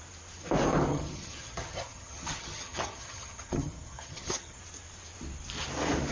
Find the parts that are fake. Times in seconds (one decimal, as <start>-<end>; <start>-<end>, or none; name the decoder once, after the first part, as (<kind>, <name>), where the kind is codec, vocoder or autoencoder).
0.9-4.6 (vocoder, HiFi-GAN)